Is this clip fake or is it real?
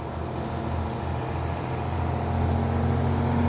real